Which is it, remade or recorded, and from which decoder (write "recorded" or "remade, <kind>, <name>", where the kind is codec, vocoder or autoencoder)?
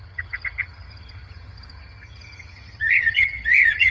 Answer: remade, vocoder, HiFi-GAN